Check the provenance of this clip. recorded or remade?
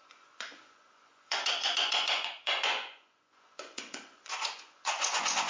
remade